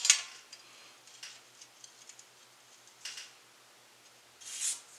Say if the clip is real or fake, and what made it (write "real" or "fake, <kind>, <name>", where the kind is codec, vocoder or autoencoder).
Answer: real